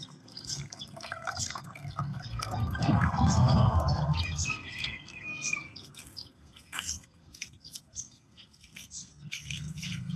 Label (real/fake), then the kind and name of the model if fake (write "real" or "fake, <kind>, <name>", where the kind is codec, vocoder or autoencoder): fake, codec, SNAC